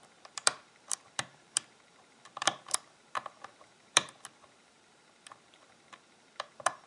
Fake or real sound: fake